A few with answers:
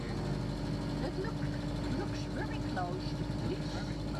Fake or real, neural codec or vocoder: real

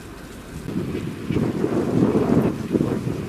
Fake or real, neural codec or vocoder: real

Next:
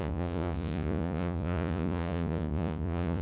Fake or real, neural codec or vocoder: fake, vocoder, Vocos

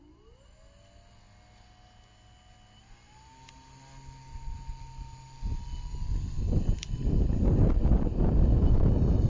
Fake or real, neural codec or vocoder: real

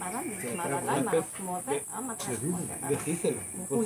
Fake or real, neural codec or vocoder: real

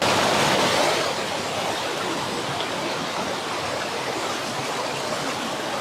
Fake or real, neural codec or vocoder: real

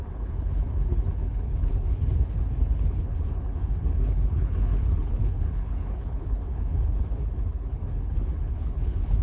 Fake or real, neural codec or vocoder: fake, codec, HILCodec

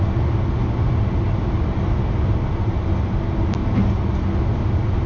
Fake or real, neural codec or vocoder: real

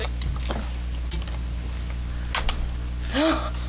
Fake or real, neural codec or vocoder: real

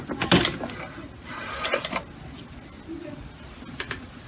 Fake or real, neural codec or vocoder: real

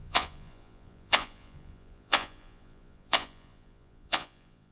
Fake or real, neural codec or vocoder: fake, vocoder, Vocos